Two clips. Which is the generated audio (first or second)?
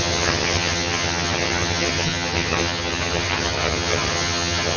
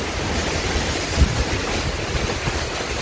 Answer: first